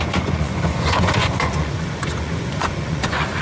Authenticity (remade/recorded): remade